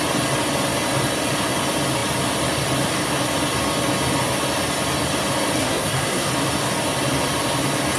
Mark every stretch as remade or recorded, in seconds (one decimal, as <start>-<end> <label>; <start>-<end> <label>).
0.0-5.6 recorded; 5.6-6.3 remade; 6.3-8.0 recorded